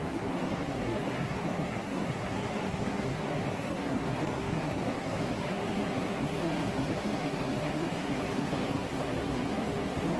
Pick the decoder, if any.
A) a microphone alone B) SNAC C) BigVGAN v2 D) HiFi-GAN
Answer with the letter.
B